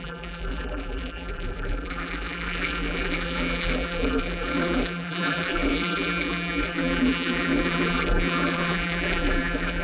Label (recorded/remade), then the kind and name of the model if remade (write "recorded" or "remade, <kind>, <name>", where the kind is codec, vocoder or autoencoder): remade, vocoder, BigVGAN v2